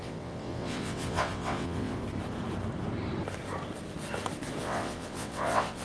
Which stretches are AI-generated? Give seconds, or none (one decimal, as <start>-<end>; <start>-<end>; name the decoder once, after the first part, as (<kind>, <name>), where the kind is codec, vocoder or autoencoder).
0.0-2.0 (vocoder, WaveNeXt); 4.6-5.8